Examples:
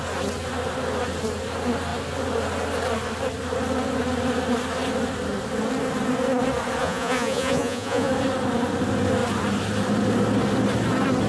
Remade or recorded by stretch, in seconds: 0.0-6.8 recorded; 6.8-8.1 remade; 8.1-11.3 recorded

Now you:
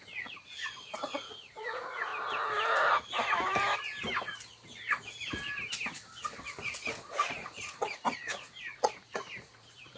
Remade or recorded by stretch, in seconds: 0.0-2.1 remade; 2.1-7.1 recorded; 7.1-10.0 remade

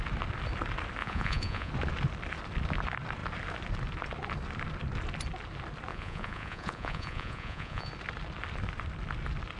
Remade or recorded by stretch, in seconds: 0.0-1.0 recorded; 1.0-1.7 remade; 1.7-5.9 recorded; 5.9-7.9 remade; 7.9-9.6 recorded

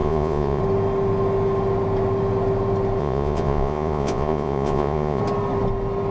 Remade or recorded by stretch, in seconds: 0.0-0.6 remade; 0.6-3.0 recorded; 3.0-5.2 remade; 5.2-6.1 recorded

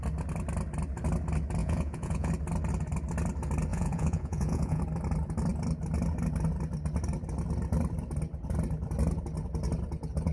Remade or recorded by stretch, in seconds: 0.0-1.6 recorded; 1.6-2.3 remade; 2.3-3.7 recorded; 3.7-4.8 remade; 4.8-10.3 recorded

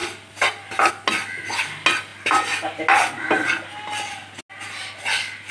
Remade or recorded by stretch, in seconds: 0.0-5.5 recorded

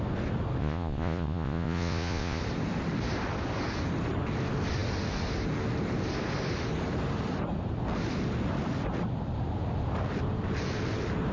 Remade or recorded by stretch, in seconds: 0.0-0.6 recorded; 0.6-2.4 remade; 2.4-11.3 recorded

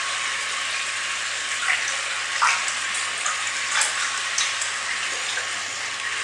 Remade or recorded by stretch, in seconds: 0.0-6.2 recorded